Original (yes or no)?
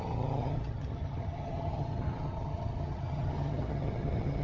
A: no